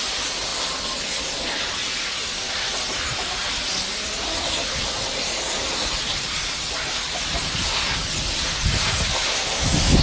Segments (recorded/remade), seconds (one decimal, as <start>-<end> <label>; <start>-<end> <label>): 0.0-10.0 recorded